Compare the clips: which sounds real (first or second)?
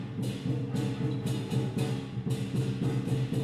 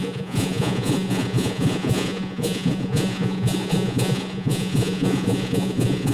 first